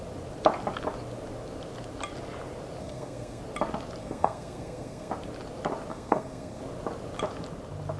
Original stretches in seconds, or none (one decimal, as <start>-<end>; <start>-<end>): 0.0-2.8; 3.4-4.0; 5.1-5.9; 6.6-8.0